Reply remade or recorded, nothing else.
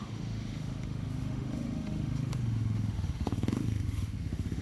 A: remade